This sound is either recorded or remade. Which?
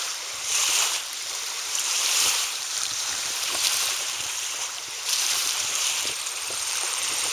remade